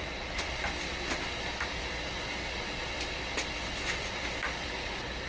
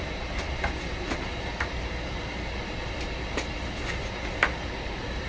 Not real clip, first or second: second